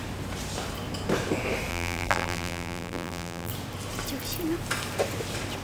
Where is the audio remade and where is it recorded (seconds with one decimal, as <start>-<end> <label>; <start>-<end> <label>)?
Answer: 0.0-1.7 recorded; 1.7-3.5 remade; 3.5-5.6 recorded